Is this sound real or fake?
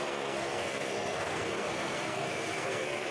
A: fake